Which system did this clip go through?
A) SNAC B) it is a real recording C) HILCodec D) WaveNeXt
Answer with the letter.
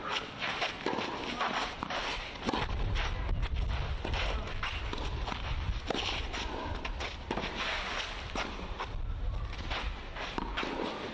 B